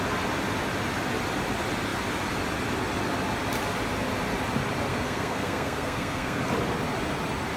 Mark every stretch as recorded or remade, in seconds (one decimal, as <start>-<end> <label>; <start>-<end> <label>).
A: 0.0-4.9 recorded; 4.9-6.4 remade; 6.4-7.6 recorded